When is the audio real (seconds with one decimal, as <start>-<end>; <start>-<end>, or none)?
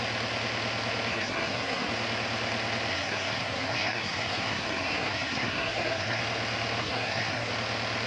0.0-1.1; 1.9-2.9; 6.2-6.8; 7.5-8.1